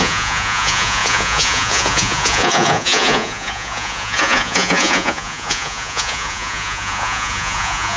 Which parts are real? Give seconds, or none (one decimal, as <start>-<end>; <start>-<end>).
none